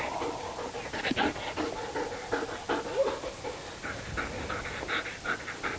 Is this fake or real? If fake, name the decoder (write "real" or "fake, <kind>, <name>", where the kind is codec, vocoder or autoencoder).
real